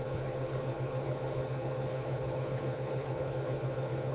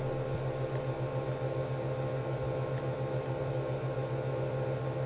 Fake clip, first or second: first